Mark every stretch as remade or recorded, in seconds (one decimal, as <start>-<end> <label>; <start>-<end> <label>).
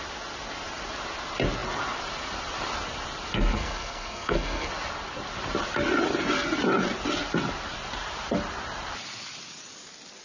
0.0-3.3 recorded; 3.3-4.7 remade; 4.7-10.2 recorded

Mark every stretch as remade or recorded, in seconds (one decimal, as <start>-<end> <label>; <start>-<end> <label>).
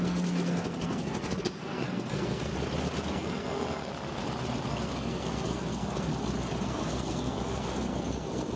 0.0-2.5 remade; 2.5-3.1 recorded; 3.1-3.9 remade; 3.9-4.7 recorded; 4.7-6.1 remade; 6.1-6.6 recorded; 6.6-8.6 remade